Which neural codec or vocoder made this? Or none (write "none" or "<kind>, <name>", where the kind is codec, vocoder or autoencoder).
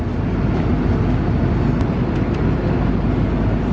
none